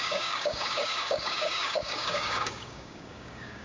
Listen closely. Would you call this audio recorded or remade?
remade